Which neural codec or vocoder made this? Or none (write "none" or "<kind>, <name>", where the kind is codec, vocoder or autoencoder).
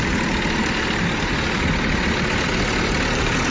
none